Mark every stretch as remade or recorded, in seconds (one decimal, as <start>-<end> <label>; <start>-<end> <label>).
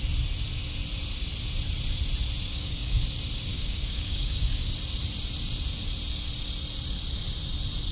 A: 0.0-2.5 recorded; 2.5-3.0 remade; 3.0-3.5 recorded; 3.5-4.7 remade; 4.7-7.9 recorded